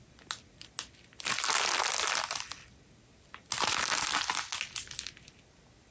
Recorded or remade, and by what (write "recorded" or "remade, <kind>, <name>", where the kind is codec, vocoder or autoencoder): recorded